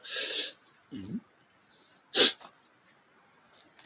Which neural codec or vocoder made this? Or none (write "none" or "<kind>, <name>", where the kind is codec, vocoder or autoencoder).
none